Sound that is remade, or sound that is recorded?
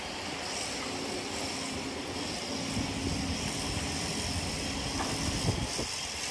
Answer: recorded